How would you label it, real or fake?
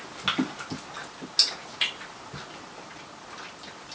real